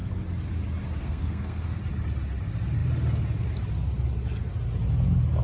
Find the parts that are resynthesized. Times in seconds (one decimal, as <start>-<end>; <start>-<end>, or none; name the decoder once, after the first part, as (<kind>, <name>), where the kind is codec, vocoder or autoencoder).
1.0-1.8 (codec, SNAC)